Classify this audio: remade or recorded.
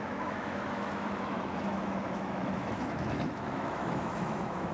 remade